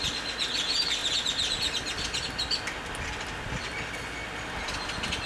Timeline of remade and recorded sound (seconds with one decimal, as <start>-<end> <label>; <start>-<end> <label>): 0.0-5.3 recorded